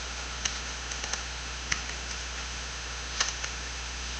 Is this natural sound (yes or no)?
no